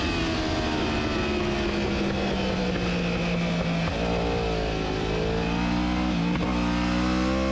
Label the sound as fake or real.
real